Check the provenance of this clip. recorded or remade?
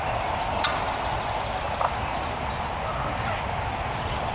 recorded